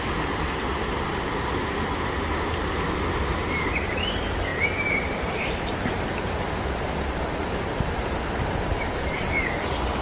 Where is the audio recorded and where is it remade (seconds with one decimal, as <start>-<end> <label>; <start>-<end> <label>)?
0.0-4.5 recorded; 4.5-6.0 remade; 6.0-8.4 recorded; 8.4-9.2 remade; 9.2-10.0 recorded